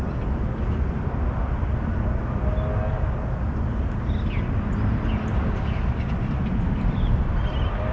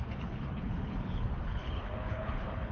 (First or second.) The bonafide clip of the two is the first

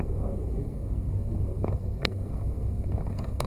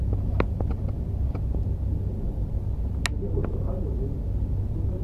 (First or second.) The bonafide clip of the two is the second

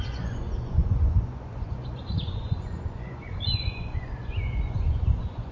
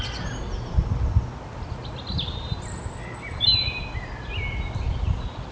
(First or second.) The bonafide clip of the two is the second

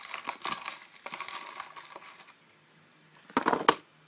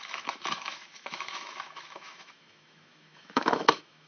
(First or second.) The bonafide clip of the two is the first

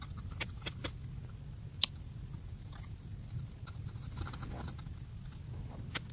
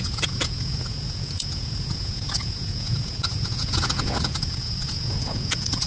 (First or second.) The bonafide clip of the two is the first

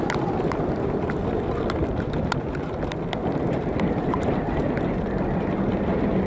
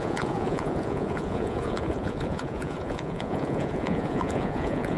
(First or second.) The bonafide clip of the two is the first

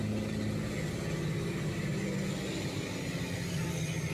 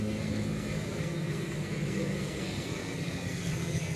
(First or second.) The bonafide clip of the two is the first